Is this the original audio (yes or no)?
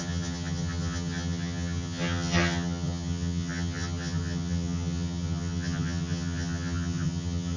no